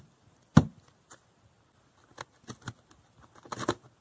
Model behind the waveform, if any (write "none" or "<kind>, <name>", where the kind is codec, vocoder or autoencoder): none